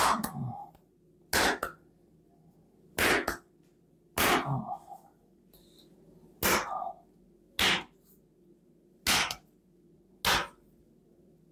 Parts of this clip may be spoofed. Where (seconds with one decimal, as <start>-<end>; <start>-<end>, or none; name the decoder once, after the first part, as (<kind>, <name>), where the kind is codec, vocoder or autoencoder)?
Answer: none